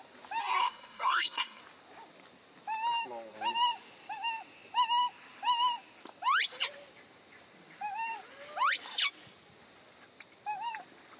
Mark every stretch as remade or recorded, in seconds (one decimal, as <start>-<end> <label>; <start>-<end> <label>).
0.0-0.4 recorded; 0.4-1.6 remade; 1.6-11.2 recorded